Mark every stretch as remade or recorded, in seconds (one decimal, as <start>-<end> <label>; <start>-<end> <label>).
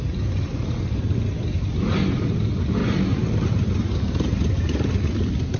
0.0-2.8 recorded; 2.8-5.6 remade